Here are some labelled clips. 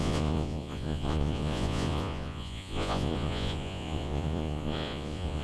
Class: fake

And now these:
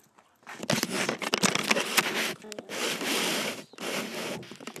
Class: real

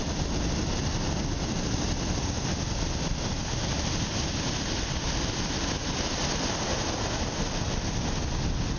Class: real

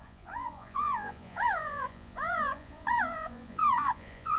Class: fake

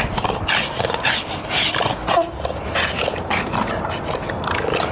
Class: real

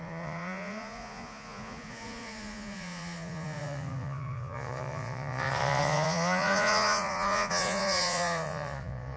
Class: fake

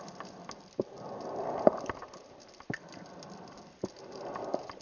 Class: real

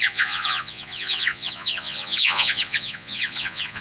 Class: fake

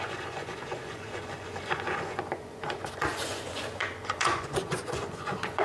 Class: fake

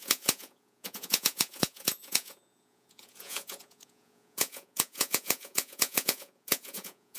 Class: fake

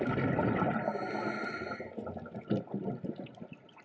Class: real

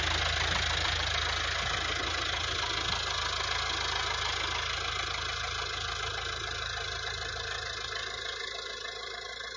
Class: real